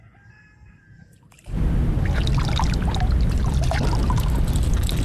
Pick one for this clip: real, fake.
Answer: real